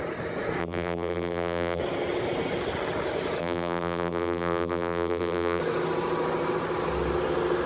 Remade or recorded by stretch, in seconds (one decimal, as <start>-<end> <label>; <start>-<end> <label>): 0.0-0.6 recorded; 0.6-1.8 remade; 1.8-3.4 recorded; 3.4-5.6 remade; 5.6-7.7 recorded